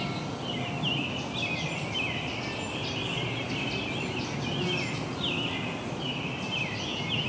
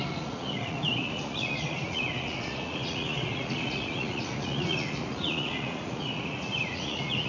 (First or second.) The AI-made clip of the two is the second